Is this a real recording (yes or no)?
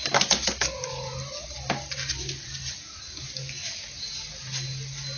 yes